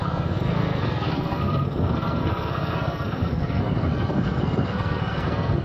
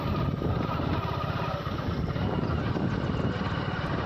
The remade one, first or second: first